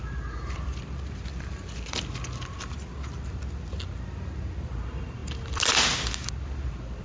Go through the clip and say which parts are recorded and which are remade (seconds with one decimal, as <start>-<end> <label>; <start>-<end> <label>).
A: 0.0-7.0 recorded